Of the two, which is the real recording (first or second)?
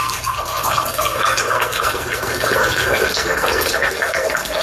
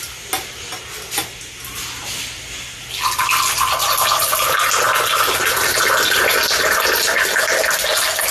second